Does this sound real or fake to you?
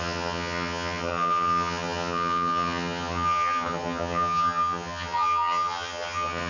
fake